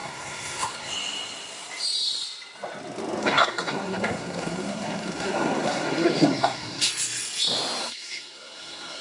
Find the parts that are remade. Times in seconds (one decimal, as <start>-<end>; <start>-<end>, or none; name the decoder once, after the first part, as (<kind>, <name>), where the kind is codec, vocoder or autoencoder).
0.0-0.9 (codec, SNAC); 3.2-6.9; 7.8-9.0